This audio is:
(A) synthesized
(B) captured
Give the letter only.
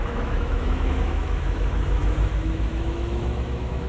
A